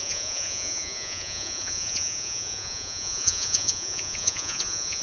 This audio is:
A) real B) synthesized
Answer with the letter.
B